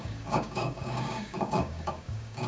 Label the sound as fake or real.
fake